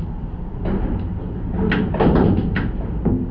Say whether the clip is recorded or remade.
recorded